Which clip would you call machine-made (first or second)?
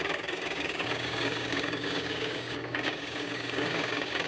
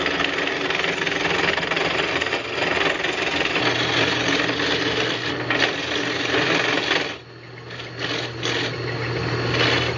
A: first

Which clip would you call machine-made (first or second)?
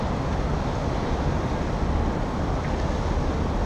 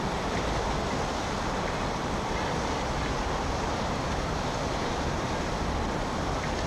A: second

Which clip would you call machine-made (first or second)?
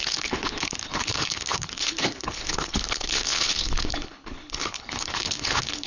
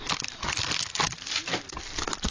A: first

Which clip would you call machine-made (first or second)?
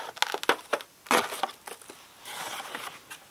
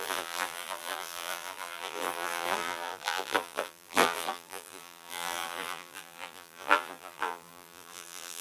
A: second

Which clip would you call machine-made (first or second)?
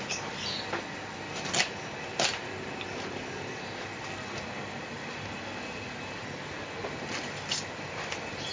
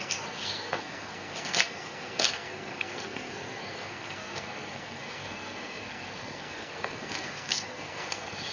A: second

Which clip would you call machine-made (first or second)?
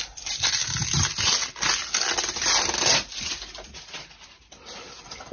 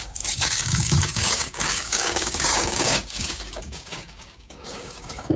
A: second